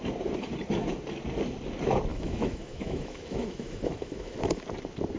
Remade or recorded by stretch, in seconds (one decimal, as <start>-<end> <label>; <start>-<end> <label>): 0.0-2.1 recorded; 2.1-4.6 remade; 4.6-5.2 recorded